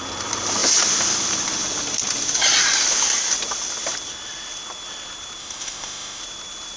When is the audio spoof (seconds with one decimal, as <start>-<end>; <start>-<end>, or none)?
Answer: 5.4-6.2